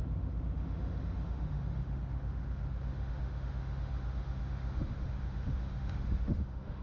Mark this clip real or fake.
fake